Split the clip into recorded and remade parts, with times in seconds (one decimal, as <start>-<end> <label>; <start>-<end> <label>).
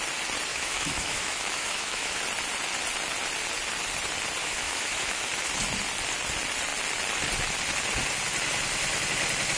0.0-0.5 recorded; 0.5-2.2 remade; 2.2-4.4 recorded; 4.4-5.3 remade; 5.3-9.6 recorded